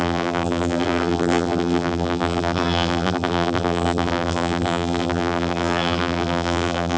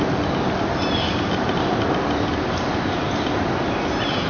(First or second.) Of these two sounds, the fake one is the first